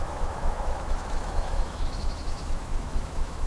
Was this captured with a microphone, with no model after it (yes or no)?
no